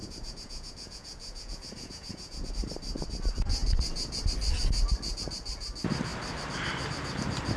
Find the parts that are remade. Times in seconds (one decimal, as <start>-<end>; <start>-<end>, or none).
0.0-2.5